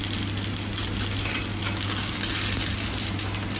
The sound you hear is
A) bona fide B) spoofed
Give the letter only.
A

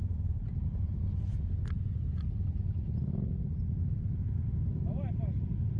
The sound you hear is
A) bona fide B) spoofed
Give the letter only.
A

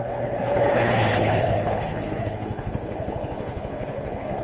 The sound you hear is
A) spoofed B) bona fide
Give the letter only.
A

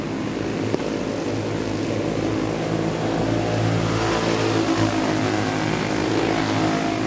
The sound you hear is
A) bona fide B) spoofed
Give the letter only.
A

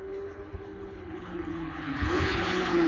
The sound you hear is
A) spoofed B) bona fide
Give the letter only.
A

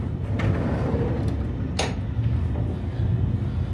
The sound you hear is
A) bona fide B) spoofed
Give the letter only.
A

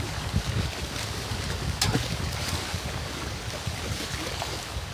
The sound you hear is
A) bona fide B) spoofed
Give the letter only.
B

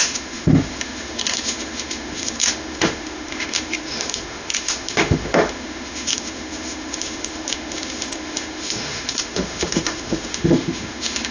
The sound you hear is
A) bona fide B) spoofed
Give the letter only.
B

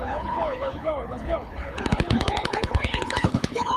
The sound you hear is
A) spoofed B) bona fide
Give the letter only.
A